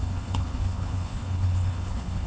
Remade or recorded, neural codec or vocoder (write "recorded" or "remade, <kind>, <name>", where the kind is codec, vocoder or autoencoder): remade, codec, HILCodec